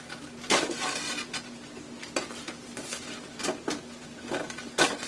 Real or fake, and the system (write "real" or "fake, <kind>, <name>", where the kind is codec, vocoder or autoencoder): real